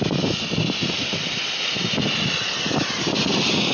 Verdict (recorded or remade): recorded